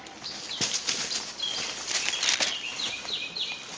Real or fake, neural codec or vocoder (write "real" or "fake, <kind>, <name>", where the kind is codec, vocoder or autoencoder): real